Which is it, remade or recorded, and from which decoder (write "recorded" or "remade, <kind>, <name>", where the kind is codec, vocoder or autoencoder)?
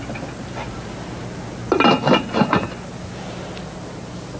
recorded